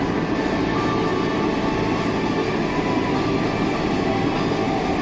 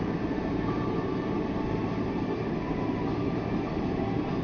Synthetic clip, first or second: second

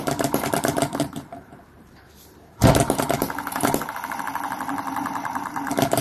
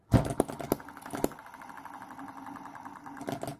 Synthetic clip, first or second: first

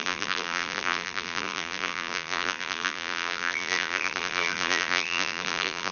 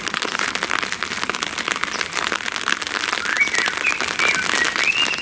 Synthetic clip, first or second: first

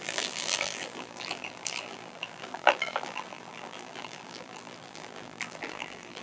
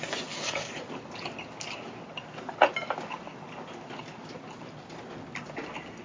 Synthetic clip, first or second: first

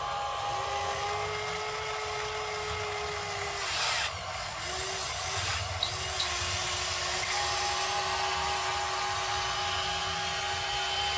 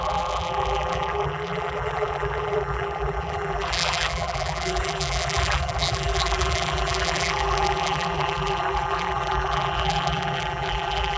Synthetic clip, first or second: second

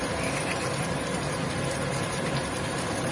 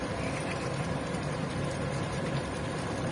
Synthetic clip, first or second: second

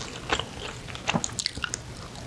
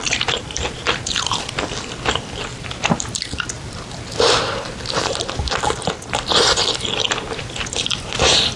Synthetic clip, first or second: second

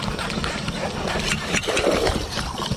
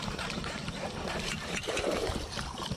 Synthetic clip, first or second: second